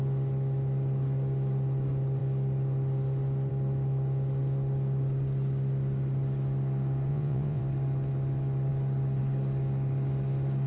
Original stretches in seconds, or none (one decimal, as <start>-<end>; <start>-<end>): 0.0-7.1; 7.6-10.7